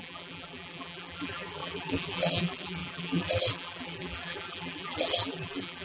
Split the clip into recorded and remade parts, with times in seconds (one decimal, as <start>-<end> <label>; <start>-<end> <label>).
0.0-5.8 remade